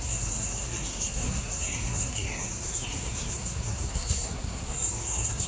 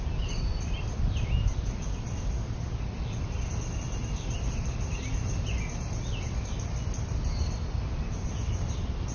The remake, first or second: first